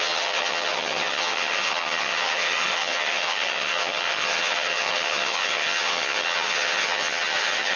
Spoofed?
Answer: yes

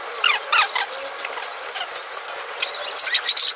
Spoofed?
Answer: no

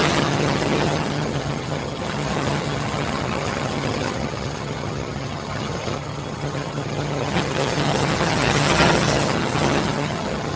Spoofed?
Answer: yes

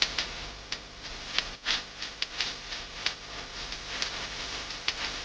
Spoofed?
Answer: no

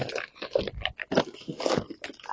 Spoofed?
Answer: no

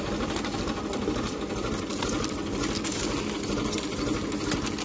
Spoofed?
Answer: no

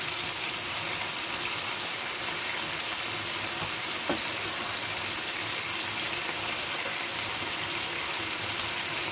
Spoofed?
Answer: no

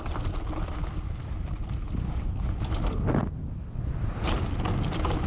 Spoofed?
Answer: no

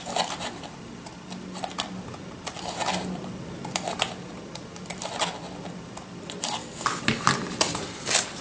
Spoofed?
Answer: no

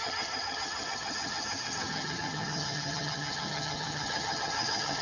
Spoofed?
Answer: yes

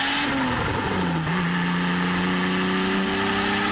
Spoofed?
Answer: no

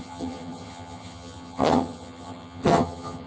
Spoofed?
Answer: yes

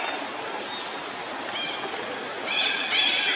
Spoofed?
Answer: no